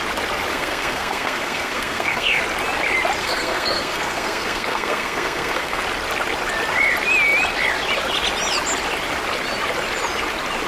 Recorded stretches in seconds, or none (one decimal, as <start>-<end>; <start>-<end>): 0.0-0.5; 2.4-3.2; 5.8-10.7

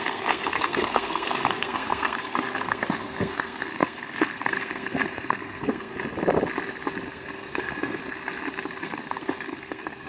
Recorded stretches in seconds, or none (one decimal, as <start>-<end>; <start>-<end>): 5.9-7.1; 8.0-8.8

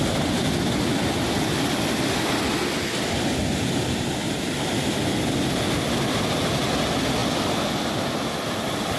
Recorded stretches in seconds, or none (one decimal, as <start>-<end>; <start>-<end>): 0.0-9.0

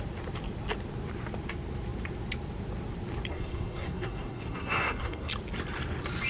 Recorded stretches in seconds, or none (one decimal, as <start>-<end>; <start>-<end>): 0.0-3.3; 5.3-6.3

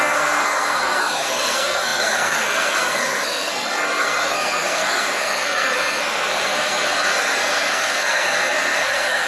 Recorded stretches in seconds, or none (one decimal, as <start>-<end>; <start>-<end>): none